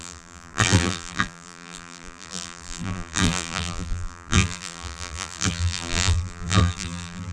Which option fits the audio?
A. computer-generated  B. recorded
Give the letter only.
A